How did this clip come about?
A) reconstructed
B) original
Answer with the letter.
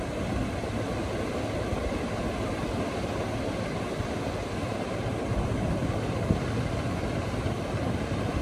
B